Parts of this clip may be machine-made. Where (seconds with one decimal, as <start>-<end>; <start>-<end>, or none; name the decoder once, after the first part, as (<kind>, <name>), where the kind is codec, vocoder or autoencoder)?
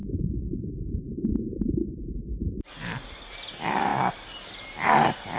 0.0-5.4 (vocoder, BigVGAN v2)